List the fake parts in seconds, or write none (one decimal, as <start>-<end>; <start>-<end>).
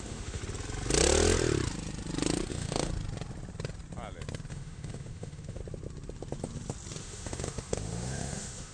0.0-0.4; 2.5-2.9; 4.5-5.6; 7.0-8.7